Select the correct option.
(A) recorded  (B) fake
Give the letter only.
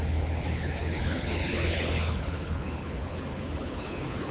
B